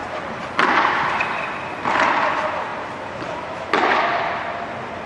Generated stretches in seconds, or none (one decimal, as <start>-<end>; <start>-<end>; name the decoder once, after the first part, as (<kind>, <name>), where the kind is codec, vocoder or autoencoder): 2.7-4.4 (vocoder, BigVGAN v2)